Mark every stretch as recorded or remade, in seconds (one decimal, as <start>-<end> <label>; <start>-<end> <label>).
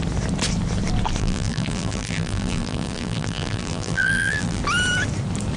0.0-1.2 recorded; 1.2-4.6 remade; 4.6-5.6 recorded